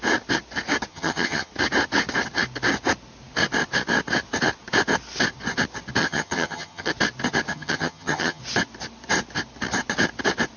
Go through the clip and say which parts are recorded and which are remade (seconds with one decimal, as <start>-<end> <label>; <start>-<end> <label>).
0.0-0.9 recorded; 0.9-1.5 remade; 1.5-6.0 recorded; 6.0-6.9 remade; 6.9-7.5 recorded; 7.5-8.4 remade; 8.4-10.6 recorded